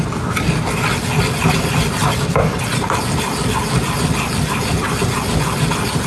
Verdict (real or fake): real